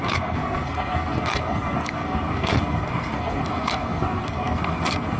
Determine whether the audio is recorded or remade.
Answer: remade